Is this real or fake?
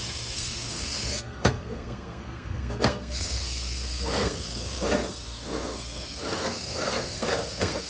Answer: fake